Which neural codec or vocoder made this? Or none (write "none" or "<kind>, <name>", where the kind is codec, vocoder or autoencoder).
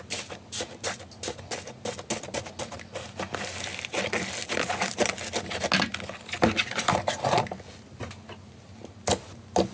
none